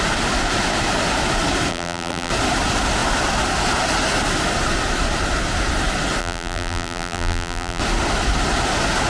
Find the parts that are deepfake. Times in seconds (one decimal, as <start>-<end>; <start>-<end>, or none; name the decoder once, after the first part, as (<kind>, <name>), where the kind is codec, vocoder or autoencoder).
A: 1.7-2.3 (vocoder, BigVGAN v2); 6.2-7.8